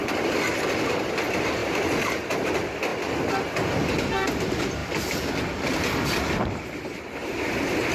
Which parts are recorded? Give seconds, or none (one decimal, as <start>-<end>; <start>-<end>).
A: 0.0-1.6; 2.5-7.9